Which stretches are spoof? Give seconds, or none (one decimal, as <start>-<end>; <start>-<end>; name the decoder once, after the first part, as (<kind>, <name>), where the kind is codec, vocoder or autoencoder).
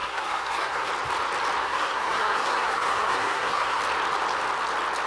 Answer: 0.0-0.9 (codec, SNAC); 1.6-3.8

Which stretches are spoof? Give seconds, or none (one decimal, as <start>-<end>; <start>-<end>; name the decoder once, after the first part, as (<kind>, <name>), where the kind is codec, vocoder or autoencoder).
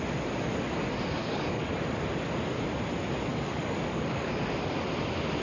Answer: 1.2-1.7 (codec, DAC); 3.3-4.3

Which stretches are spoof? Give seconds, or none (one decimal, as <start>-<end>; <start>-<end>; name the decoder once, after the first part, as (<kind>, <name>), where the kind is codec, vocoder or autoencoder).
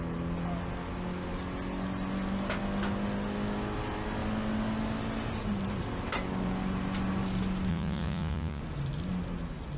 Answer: 7.7-8.6 (vocoder, Vocos)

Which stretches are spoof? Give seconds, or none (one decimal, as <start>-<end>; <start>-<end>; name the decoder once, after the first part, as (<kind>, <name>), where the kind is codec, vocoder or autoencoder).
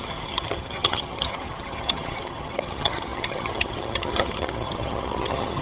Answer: 0.0-5.6 (vocoder, HiFi-GAN)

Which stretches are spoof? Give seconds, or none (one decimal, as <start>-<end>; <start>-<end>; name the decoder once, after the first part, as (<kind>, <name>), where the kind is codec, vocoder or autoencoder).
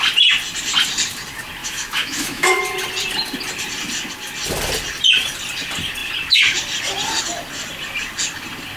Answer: 1.6-2.6 (autoencoder, DAC-VAE)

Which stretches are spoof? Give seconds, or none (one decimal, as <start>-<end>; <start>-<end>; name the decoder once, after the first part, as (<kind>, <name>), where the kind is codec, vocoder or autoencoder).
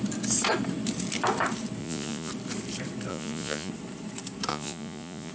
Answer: 1.8-2.3 (vocoder, Vocos); 3.1-3.7; 4.5-5.3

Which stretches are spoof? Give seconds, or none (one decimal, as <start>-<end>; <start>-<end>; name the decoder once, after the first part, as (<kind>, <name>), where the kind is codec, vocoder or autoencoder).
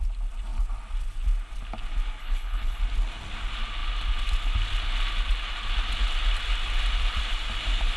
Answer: 2.2-2.8 (codec, HILCodec)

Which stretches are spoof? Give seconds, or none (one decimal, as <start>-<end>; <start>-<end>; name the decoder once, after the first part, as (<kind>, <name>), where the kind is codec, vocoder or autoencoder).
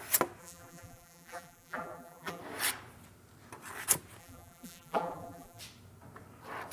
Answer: 0.4-2.4 (vocoder, BigVGAN v2); 4.2-5.6